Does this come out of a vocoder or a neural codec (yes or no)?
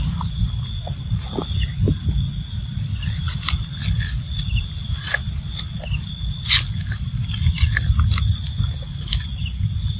no